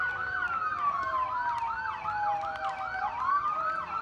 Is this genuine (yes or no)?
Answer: yes